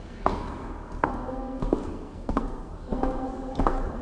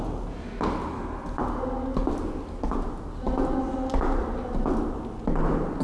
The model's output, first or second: first